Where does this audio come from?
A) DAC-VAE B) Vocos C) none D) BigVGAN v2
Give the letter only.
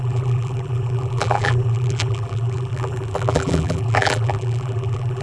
D